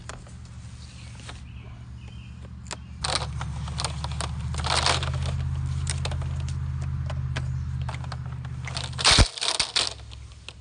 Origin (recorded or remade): recorded